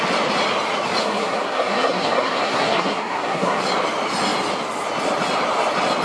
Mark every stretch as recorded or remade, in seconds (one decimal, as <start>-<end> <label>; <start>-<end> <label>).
0.0-1.0 recorded; 1.0-3.6 remade; 3.6-6.0 recorded